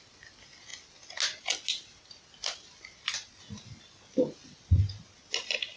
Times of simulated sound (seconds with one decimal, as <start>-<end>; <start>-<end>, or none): none